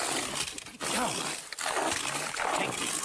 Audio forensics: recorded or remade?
recorded